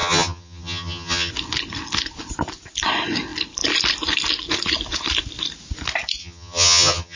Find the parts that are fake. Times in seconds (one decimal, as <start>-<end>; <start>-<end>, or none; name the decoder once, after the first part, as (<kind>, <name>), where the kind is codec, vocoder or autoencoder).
0.0-1.3 (vocoder, HiFi-GAN); 6.2-7.2

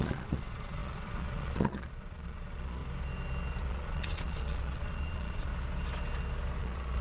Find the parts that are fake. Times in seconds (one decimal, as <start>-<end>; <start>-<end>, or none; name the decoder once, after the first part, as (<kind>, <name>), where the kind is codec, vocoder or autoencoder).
0.0-2.8 (vocoder, Vocos); 3.6-5.5; 6.6-7.0

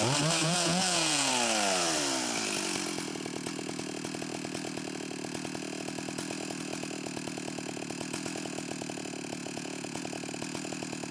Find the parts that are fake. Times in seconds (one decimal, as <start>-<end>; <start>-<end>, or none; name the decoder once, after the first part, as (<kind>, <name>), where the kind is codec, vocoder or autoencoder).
0.4-1.3 (vocoder, Vocos); 9.4-10.0

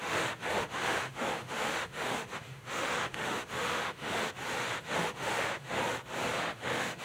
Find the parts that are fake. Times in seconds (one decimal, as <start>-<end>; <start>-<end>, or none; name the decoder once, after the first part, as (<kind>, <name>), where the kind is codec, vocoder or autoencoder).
0.0-4.2 (autoencoder, DAC-VAE); 4.8-5.8; 6.4-7.0